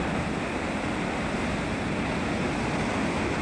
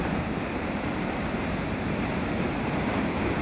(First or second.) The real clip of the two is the first